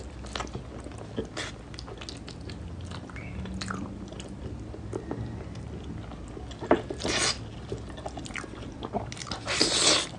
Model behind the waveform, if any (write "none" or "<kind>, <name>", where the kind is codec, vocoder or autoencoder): none